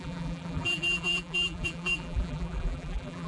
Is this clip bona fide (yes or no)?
no